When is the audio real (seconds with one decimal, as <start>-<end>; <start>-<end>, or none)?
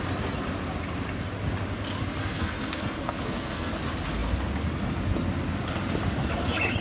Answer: 0.0-2.2; 3.7-6.8